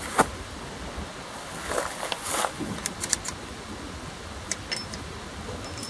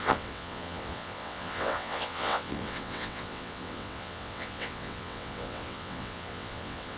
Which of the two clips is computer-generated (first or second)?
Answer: second